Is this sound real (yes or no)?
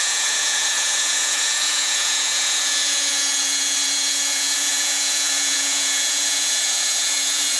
no